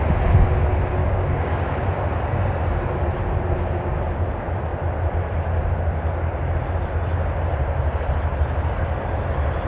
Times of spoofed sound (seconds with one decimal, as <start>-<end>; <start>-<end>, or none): 1.0-1.6